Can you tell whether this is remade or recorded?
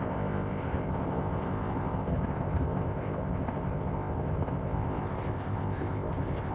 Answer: remade